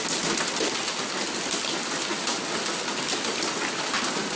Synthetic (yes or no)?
no